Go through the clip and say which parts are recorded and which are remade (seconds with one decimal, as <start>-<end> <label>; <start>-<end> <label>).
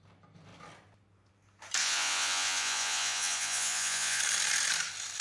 0.0-1.8 recorded; 1.8-4.2 remade; 4.2-5.2 recorded